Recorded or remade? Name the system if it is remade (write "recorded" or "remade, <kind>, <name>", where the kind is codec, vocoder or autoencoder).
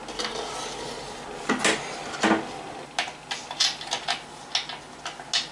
recorded